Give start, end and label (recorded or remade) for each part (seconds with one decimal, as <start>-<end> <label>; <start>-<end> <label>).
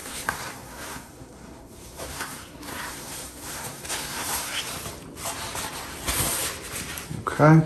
0.0-4.6 remade; 4.6-7.7 recorded